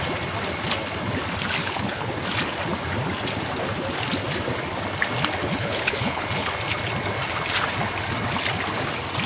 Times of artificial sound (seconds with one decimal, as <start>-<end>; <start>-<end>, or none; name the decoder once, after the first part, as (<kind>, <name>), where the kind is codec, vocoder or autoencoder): 1.6-2.1 (codec, HILCodec); 5.4-6.5